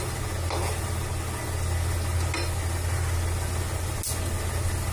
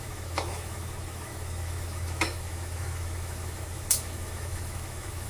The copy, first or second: second